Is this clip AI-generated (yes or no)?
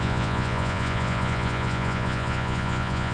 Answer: yes